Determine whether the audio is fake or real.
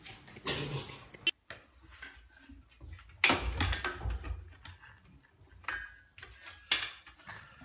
real